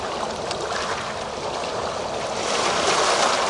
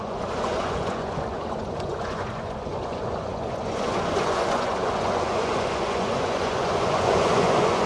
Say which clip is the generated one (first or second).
second